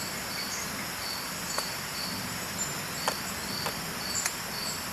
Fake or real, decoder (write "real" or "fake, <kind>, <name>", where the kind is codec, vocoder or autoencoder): fake, vocoder, BigVGAN v2